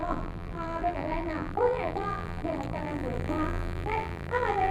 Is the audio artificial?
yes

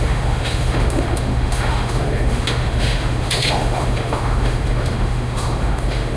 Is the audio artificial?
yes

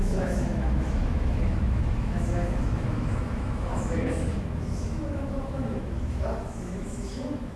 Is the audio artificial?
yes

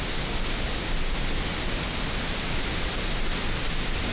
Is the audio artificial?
no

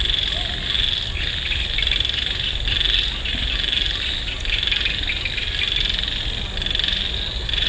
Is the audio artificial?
no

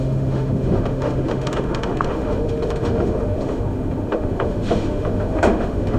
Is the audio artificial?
yes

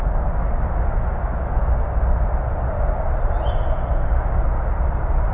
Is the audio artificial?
no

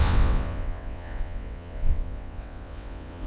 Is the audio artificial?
yes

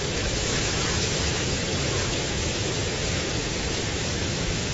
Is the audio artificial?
yes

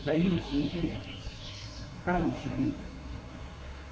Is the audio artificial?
yes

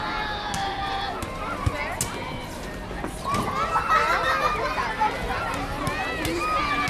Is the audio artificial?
no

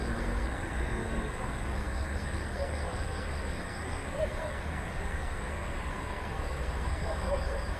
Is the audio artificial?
yes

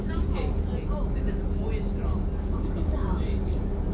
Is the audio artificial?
no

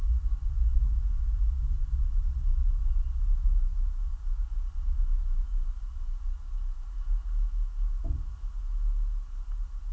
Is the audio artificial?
no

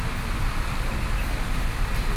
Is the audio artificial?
no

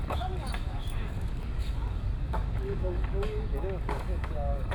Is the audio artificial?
yes